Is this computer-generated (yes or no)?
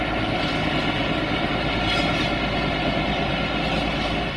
no